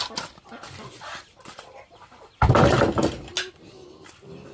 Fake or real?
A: real